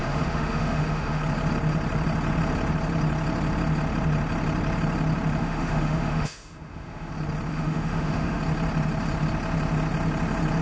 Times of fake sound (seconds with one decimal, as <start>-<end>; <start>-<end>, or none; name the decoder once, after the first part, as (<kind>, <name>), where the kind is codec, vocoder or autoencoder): 0.0-1.2 (autoencoder, DAC-VAE); 5.4-7.1; 7.5-8.4